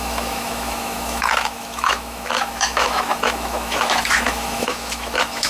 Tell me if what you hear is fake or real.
fake